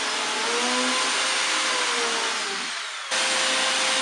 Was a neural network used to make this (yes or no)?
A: no